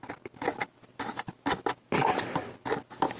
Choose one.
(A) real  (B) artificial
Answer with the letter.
A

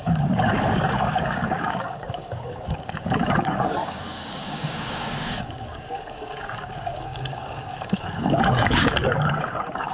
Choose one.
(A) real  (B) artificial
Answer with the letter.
B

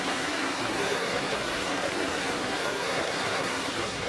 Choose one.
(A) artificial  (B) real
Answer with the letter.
A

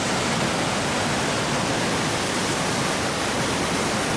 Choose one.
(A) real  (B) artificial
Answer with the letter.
A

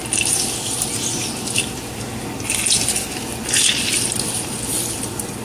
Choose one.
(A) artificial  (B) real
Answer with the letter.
B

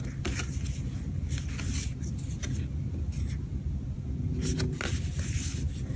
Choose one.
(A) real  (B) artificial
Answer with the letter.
A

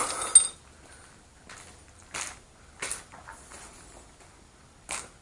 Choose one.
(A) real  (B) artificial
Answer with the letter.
A